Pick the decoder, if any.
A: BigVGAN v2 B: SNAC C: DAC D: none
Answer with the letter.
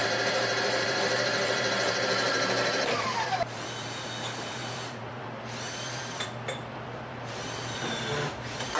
A